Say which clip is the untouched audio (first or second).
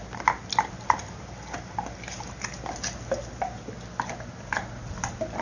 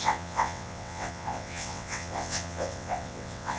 first